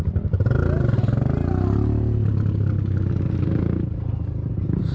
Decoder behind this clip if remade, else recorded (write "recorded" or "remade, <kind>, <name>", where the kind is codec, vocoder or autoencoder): recorded